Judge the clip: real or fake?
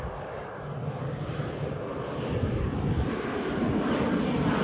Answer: real